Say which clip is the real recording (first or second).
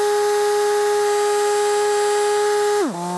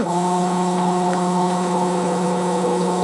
first